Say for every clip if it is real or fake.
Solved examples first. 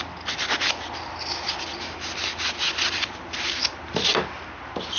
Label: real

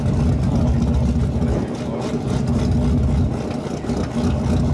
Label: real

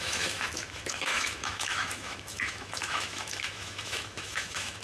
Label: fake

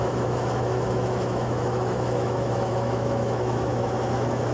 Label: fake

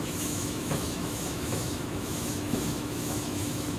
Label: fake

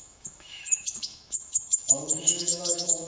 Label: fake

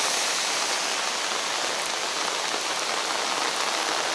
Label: real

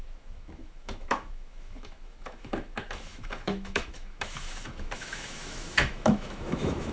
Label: fake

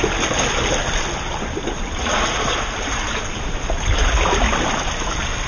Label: real